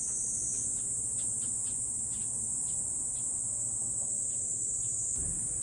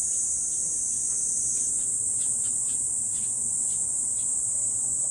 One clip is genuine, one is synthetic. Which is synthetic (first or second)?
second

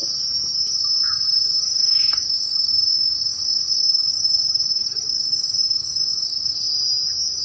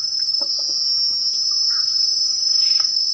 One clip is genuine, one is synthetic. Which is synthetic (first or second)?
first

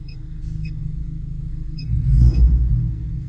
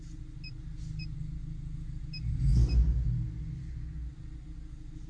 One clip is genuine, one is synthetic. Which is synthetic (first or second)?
first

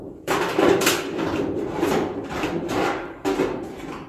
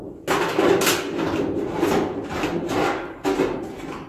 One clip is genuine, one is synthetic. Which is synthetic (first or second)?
first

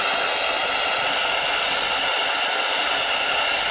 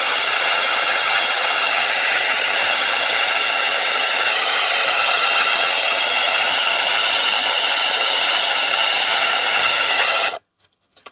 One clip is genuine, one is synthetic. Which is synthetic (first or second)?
second